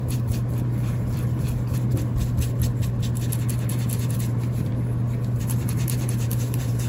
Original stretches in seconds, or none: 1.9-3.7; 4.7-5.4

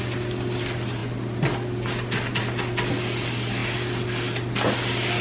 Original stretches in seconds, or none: 0.0-1.0; 2.9-5.2